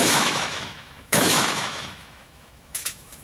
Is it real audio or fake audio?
fake